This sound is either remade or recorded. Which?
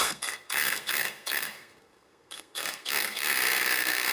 remade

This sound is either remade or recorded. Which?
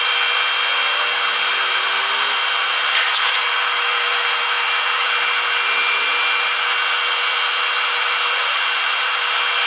recorded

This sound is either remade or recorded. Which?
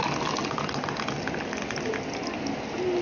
recorded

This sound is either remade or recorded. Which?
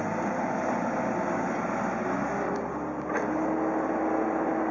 recorded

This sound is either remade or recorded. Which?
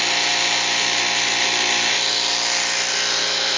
remade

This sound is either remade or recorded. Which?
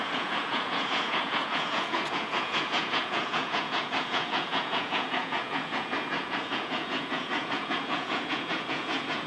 remade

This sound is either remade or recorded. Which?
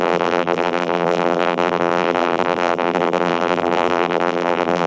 remade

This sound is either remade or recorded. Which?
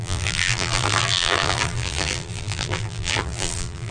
remade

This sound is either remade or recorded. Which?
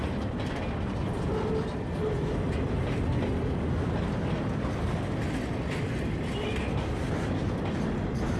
recorded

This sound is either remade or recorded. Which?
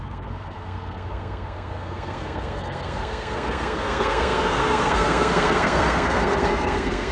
remade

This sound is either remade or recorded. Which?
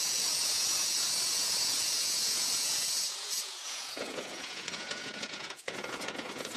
remade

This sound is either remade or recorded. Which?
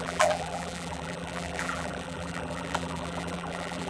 remade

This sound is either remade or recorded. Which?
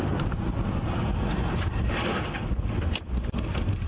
recorded